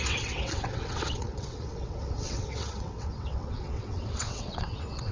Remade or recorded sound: remade